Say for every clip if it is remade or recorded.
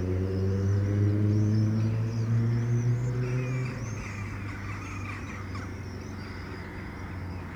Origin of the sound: recorded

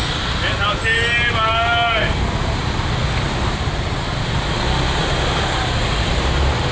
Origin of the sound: recorded